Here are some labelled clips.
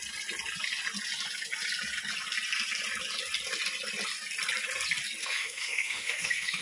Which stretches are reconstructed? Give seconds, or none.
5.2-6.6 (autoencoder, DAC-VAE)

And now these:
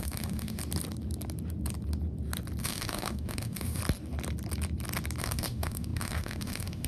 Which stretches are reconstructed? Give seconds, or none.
0.0-0.6 (autoencoder, DAC-VAE); 2.6-3.8; 5.2-6.9

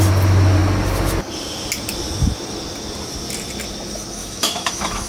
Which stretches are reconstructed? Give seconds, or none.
4.2-5.1 (autoencoder, DAC-VAE)

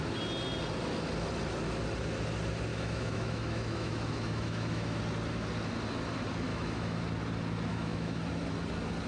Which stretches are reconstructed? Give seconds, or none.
2.7-5.0 (autoencoder, DAC-VAE); 6.5-7.0; 7.7-8.2